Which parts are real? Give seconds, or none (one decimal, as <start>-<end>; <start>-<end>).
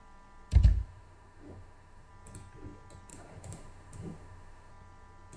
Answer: 0.0-0.7; 2.1-3.1; 4.7-5.4